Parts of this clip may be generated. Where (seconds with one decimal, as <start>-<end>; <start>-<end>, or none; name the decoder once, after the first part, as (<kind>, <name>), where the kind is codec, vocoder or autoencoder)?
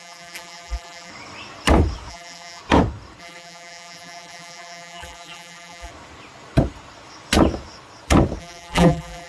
0.0-1.1 (vocoder, BigVGAN v2); 2.1-2.6; 3.2-5.9; 8.4-9.3